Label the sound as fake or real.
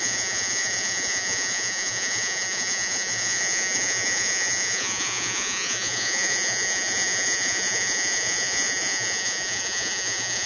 fake